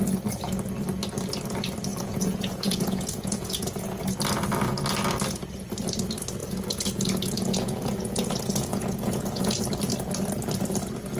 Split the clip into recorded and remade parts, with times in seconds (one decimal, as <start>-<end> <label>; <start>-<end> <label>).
0.0-1.9 recorded; 1.9-4.0 remade; 4.0-6.4 recorded; 6.4-9.6 remade; 9.6-11.2 recorded